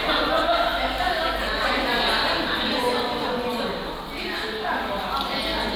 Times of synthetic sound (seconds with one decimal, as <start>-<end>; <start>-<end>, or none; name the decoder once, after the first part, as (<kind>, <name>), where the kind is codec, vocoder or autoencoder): none

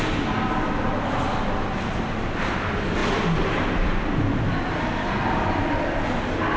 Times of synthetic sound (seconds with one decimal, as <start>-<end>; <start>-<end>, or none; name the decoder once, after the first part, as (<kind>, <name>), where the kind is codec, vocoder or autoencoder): none